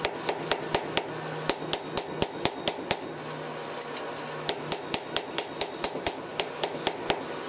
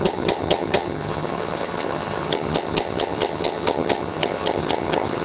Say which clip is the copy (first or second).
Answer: second